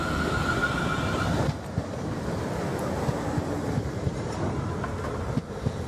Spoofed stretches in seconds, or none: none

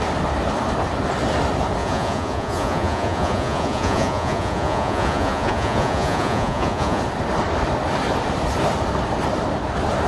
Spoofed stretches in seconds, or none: 1.8-7.0 (vocoder, Vocos)

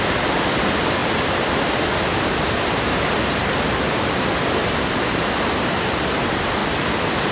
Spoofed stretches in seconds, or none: none

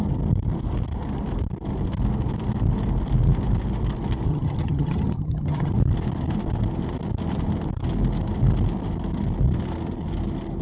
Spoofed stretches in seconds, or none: 4.3-5.7 (vocoder, HiFi-GAN)